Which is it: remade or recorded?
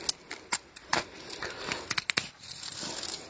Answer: recorded